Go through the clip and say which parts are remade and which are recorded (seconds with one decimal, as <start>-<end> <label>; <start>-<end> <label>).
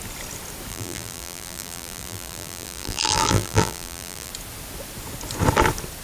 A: 0.0-0.7 recorded; 0.7-4.3 remade; 4.3-6.0 recorded